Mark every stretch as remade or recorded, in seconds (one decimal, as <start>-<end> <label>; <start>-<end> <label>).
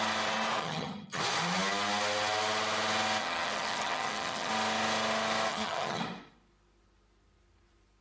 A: 0.0-0.6 recorded; 0.6-1.2 remade; 1.2-3.2 recorded; 3.2-4.5 remade; 4.5-5.5 recorded; 5.5-6.0 remade; 6.0-8.0 recorded